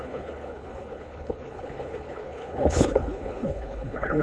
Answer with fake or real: fake